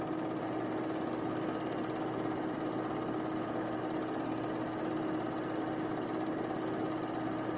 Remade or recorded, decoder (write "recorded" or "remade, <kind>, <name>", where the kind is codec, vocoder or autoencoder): recorded